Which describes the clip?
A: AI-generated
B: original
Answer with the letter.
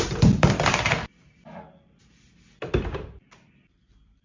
A